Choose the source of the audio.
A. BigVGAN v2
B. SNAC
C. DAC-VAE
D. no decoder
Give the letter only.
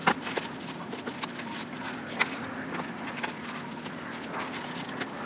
A